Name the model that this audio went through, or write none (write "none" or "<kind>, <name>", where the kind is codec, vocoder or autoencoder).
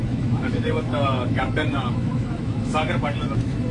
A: autoencoder, DAC-VAE